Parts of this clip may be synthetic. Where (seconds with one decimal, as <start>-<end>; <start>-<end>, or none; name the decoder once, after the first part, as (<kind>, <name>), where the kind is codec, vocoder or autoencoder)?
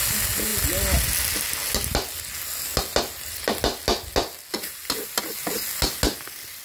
none